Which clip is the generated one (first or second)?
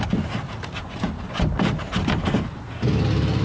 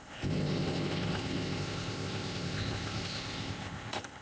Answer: second